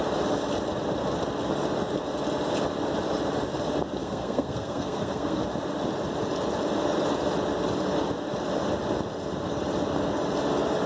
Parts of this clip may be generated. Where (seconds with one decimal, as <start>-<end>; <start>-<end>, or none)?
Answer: 4.0-5.4